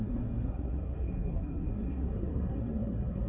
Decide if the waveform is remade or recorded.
remade